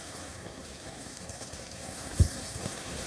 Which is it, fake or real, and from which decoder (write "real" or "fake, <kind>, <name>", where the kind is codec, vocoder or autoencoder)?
fake, codec, SNAC